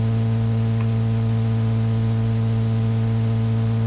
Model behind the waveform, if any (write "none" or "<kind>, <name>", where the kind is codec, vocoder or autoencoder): none